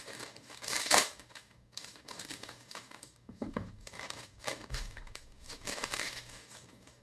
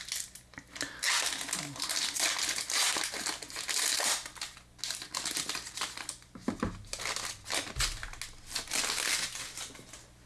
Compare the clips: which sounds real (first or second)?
second